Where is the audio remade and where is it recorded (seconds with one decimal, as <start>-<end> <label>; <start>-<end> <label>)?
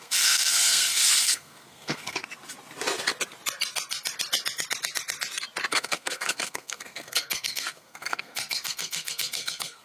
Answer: 0.0-2.2 remade; 2.2-5.7 recorded; 5.7-9.8 remade